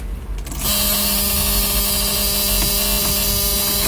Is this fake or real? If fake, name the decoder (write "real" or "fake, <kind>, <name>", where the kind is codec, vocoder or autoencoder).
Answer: real